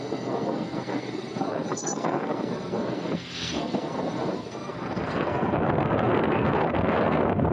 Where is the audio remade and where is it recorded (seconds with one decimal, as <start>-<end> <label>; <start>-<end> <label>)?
0.0-7.5 remade